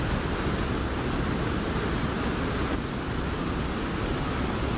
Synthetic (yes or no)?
no